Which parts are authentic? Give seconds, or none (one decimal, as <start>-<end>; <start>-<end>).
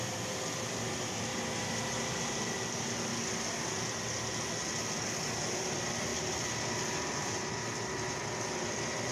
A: 1.3-2.3; 3.1-5.6; 6.1-8.2